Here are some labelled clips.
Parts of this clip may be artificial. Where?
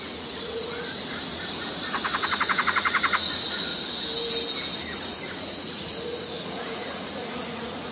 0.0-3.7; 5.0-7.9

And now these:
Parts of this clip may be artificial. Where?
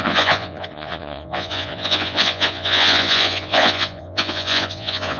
0.0-5.2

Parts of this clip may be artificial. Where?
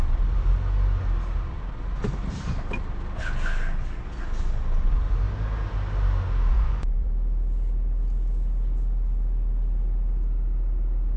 6.5-7.1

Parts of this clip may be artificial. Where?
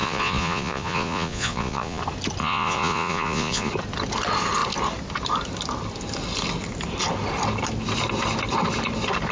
0.0-2.0; 2.4-3.7